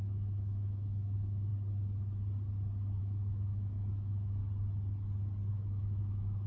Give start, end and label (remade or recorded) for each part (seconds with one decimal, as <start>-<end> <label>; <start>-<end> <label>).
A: 0.0-1.5 remade; 1.5-3.0 recorded; 3.0-4.4 remade; 4.4-5.5 recorded; 5.5-6.5 remade